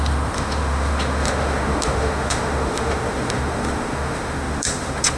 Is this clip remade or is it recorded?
remade